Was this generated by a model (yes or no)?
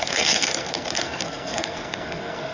yes